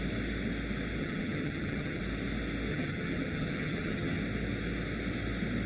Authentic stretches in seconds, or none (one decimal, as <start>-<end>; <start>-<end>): 0.0-1.0; 2.0-2.7; 4.2-5.7